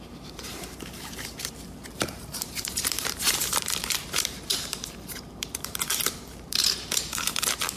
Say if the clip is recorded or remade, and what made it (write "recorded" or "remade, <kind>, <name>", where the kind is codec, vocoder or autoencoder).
remade, vocoder, BigVGAN v2